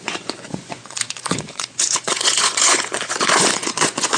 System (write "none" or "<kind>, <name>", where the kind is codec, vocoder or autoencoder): vocoder, Vocos